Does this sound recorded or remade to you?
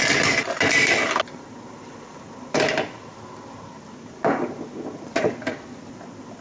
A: recorded